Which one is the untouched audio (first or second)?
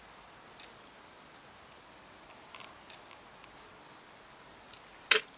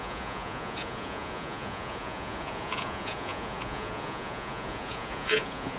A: first